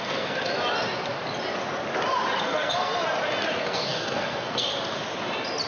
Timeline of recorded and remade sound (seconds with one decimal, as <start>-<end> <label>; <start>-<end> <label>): 0.0-0.5 remade; 0.5-2.4 recorded; 2.4-2.9 remade; 2.9-3.6 recorded; 3.6-4.7 remade; 4.7-5.7 recorded